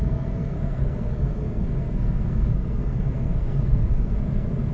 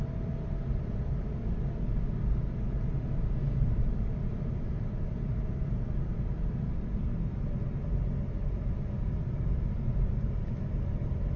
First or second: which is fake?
first